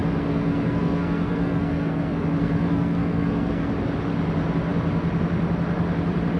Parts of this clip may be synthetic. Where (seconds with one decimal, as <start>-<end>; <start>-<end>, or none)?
0.0-3.7